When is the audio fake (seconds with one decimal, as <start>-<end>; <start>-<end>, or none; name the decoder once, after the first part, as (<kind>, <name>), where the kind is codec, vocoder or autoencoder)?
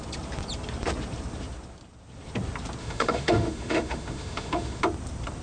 2.8-4.8 (autoencoder, DAC-VAE)